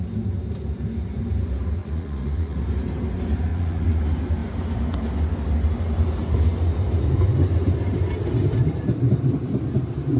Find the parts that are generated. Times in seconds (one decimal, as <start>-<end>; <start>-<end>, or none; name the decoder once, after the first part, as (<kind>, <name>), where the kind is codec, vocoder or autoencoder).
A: 1.8-2.6 (vocoder, Vocos); 3.5-4.0